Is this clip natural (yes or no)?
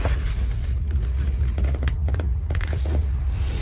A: no